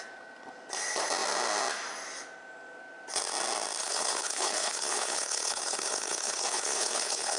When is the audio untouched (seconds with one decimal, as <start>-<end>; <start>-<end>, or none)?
0.0-3.8